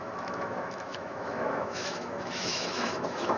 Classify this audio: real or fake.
fake